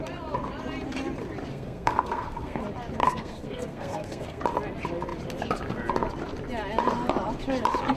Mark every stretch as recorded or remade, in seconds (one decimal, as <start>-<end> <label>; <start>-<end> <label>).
0.0-1.5 recorded; 1.5-2.6 remade; 2.6-3.0 recorded; 3.0-4.4 remade; 4.4-8.0 recorded